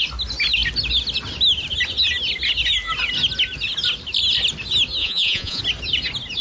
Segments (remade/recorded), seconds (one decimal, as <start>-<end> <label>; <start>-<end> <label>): 0.0-5.0 recorded; 5.0-5.6 remade; 5.6-6.4 recorded